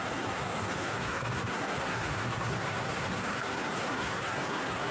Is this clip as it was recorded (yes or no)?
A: no